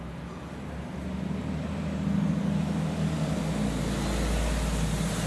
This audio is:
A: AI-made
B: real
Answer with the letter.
B